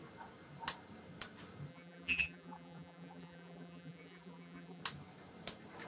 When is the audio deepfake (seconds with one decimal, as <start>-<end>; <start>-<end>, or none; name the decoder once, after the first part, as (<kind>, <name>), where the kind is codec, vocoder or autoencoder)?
1.7-4.8 (vocoder, BigVGAN v2)